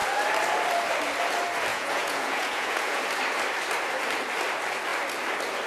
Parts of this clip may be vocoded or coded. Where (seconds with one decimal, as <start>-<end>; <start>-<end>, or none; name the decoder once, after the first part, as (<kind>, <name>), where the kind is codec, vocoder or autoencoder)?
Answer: 1.7-3.0 (vocoder, Vocos)